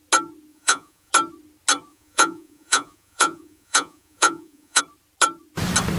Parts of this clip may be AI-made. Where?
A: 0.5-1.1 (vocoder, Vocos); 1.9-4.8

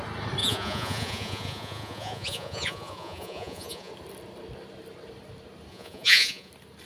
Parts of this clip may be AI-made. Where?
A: 0.4-3.9 (vocoder, Vocos); 5.7-6.5

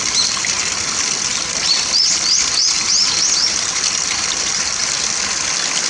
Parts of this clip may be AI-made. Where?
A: none

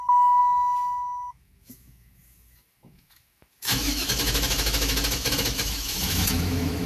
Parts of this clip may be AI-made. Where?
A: 0.0-6.9 (autoencoder, DAC-VAE)

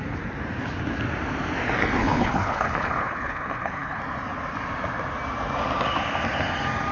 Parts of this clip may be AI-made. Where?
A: 2.0-4.0 (codec, HILCodec)

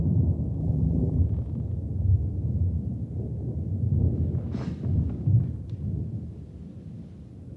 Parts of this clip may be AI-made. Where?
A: 0.6-1.2 (vocoder, BigVGAN v2)

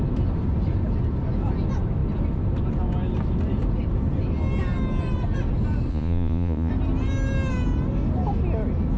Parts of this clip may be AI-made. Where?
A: 5.9-6.7 (vocoder, Vocos)

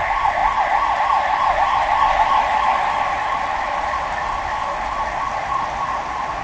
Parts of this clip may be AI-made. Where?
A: none